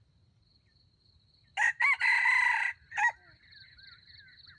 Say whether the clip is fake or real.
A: real